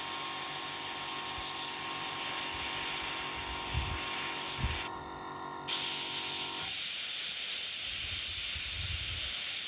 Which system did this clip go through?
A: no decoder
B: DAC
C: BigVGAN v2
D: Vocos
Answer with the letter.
A